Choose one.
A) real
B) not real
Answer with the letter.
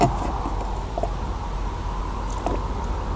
A